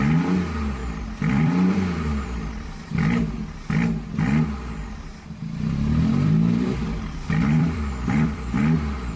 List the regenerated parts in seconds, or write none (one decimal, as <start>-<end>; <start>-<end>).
0.8-2.5; 6.1-8.6